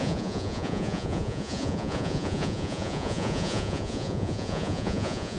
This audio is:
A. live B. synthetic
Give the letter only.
B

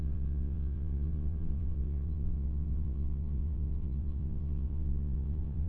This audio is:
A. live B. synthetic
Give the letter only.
B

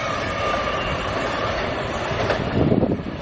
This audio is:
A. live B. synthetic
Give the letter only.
A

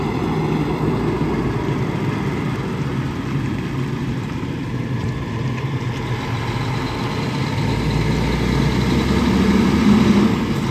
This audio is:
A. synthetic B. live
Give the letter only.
B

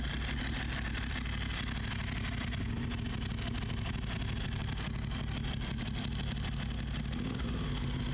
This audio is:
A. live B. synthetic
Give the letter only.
A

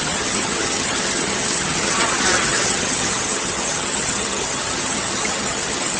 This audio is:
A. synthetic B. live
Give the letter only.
A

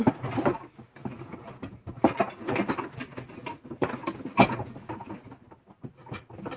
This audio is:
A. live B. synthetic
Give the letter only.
A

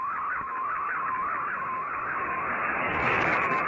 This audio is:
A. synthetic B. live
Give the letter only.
A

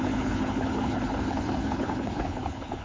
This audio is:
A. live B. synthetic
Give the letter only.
B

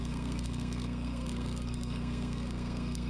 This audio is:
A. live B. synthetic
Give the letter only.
B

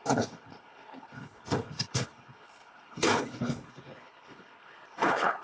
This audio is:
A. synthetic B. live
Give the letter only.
A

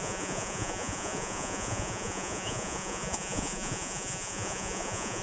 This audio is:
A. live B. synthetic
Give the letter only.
B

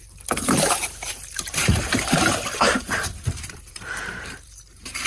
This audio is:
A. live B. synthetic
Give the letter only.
B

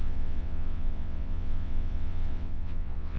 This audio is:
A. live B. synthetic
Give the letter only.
B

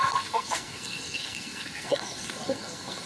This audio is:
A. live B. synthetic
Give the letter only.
B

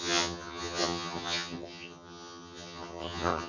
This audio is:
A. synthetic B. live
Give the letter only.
A